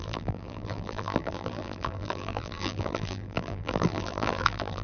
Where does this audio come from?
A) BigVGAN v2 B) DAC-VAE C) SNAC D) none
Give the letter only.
A